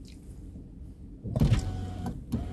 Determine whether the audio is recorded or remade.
recorded